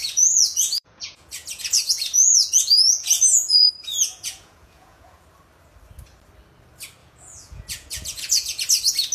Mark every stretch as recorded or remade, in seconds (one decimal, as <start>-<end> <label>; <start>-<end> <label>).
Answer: 0.0-5.2 remade; 5.2-7.0 recorded; 7.0-8.6 remade; 8.6-9.1 recorded